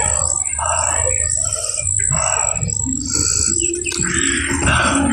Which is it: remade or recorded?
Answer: recorded